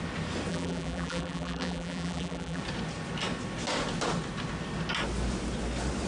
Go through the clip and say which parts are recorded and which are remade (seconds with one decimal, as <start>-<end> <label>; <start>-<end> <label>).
0.0-0.5 recorded; 0.5-2.6 remade; 2.6-6.1 recorded